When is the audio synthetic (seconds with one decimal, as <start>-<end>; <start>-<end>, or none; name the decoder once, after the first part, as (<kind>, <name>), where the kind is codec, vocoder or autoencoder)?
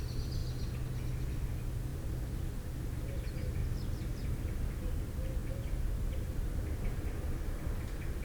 1.9-2.5 (vocoder, BigVGAN v2); 5.4-8.2